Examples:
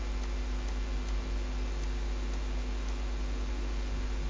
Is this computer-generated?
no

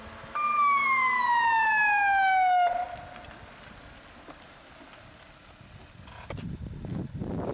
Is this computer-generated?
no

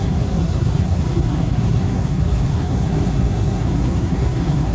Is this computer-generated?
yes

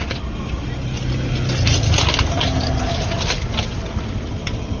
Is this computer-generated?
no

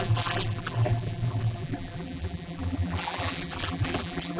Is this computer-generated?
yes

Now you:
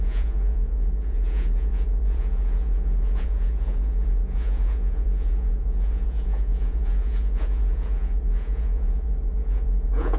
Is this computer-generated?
yes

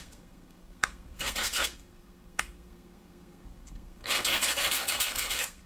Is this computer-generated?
yes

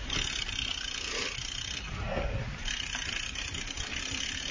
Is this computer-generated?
no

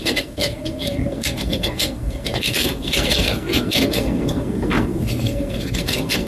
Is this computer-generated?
yes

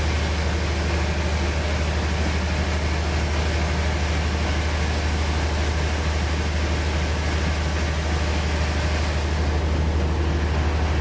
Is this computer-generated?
no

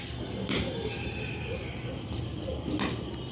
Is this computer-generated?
no